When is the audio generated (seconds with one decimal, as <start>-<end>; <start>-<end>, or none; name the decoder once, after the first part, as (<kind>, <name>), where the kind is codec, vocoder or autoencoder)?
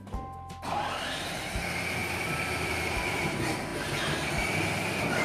2.0-2.7 (vocoder, BigVGAN v2); 3.7-4.3